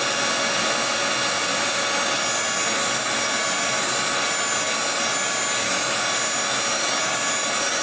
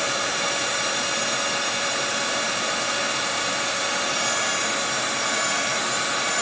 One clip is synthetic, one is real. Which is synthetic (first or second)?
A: second